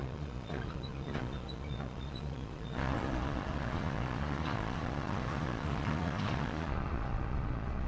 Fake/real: fake